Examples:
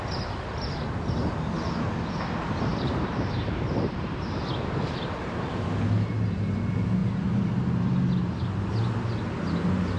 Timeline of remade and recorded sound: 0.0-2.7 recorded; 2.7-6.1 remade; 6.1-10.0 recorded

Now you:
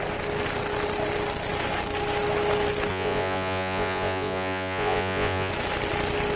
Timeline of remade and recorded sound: 0.0-2.9 recorded; 2.9-5.5 remade; 5.5-6.4 recorded